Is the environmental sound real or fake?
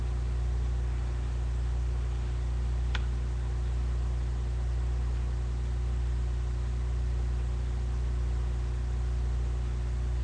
real